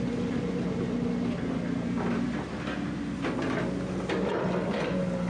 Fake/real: real